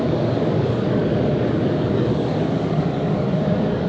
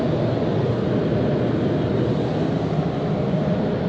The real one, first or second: second